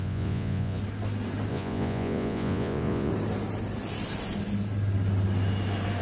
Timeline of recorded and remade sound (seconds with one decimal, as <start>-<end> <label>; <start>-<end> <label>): 0.0-0.8 remade; 0.8-1.5 recorded; 1.5-3.1 remade; 3.1-6.0 recorded